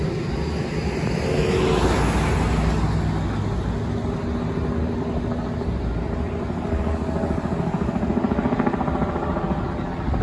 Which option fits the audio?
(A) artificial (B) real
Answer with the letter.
B